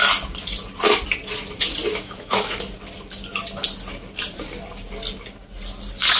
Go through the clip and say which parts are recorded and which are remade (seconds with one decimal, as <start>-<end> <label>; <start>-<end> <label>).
0.0-1.9 recorded; 1.9-2.6 remade; 2.6-6.2 recorded

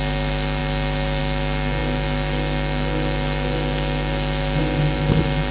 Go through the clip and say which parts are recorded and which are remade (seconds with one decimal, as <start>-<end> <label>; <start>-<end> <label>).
0.0-5.5 remade

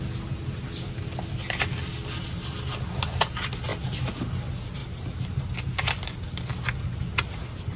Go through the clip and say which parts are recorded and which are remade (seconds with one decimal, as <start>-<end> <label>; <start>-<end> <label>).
0.0-4.8 recorded; 4.8-5.4 remade; 5.4-7.8 recorded

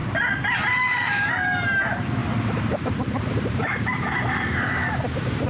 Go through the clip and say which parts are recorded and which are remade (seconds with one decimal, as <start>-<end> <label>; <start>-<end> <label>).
0.0-0.9 recorded; 0.9-5.5 remade